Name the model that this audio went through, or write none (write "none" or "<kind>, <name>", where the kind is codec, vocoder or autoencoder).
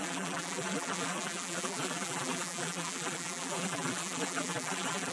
vocoder, BigVGAN v2